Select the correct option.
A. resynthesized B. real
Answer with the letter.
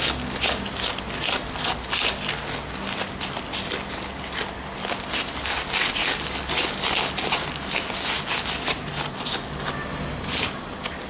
B